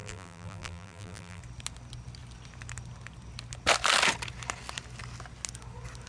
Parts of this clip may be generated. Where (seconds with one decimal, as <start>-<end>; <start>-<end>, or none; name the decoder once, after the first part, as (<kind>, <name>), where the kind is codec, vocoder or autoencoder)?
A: 0.0-1.4 (vocoder, BigVGAN v2)